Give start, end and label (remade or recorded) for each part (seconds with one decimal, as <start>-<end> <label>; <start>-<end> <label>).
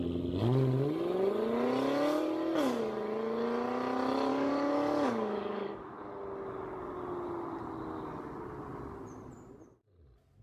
0.0-4.3 recorded; 4.3-6.1 remade; 6.1-10.4 recorded